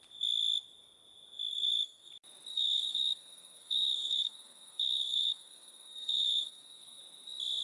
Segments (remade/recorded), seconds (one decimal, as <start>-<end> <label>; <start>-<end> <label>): 0.0-1.5 recorded; 1.5-2.1 remade; 2.1-2.5 recorded; 2.5-7.0 remade; 7.0-7.6 recorded